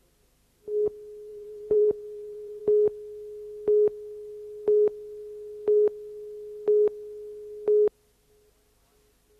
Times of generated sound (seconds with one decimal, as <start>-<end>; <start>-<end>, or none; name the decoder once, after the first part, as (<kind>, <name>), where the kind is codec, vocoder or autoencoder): 1.3-2.6 (vocoder, Vocos)